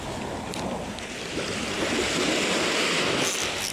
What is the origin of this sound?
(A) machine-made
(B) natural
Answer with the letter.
B